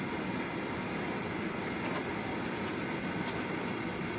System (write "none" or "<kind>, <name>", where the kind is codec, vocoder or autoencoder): none